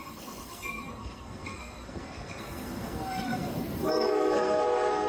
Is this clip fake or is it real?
fake